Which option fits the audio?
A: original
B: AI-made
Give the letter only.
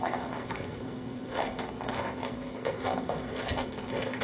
B